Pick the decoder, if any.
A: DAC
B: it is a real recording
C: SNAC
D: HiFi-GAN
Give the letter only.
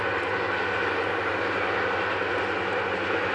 B